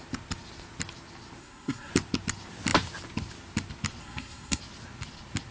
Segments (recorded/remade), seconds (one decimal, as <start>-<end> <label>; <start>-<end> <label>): 0.0-1.4 recorded; 1.4-1.9 remade; 1.9-4.0 recorded; 4.0-4.6 remade; 4.6-5.5 recorded